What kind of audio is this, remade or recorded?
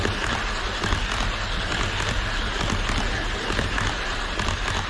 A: recorded